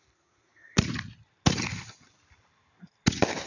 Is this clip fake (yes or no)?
no